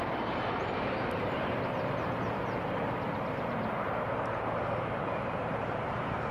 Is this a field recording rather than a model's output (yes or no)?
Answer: no